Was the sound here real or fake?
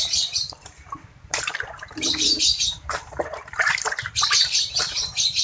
fake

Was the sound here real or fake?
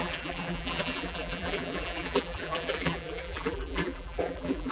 fake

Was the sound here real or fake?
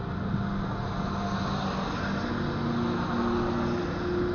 real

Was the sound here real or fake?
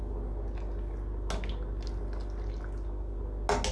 real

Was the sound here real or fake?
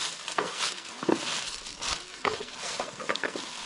fake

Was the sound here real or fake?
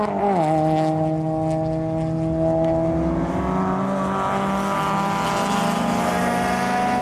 real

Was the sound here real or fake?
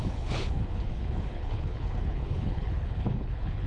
fake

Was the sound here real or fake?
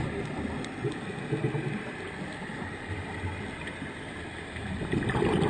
real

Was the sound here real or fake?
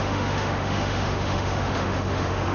fake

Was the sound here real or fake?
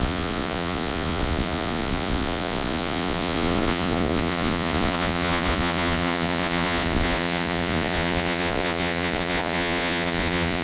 fake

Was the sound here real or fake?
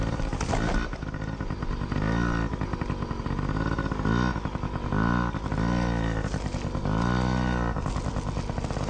real